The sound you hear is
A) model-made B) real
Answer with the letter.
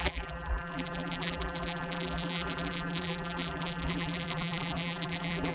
A